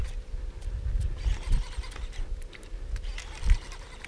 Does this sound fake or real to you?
real